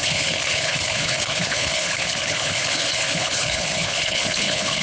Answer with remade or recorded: remade